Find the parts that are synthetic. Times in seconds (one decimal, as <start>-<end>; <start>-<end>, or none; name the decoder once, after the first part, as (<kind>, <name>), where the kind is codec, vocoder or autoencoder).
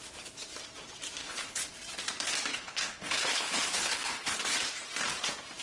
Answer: 1.2-1.7 (codec, HILCodec); 2.5-4.4